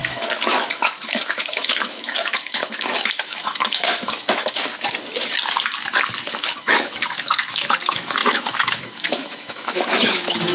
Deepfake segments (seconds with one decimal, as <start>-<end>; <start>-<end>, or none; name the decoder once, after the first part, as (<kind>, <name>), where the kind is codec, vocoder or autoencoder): 0.0-4.7 (autoencoder, DAC-VAE); 6.3-10.5